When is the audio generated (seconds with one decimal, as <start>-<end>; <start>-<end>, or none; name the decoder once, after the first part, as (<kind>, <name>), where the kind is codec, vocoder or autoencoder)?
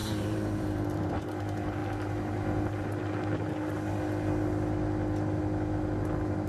0.0-1.3 (vocoder, BigVGAN v2)